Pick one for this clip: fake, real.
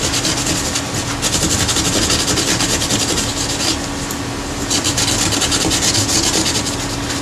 real